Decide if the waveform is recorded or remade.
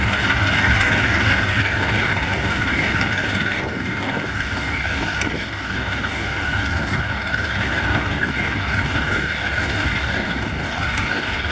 remade